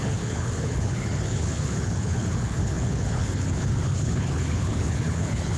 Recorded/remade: remade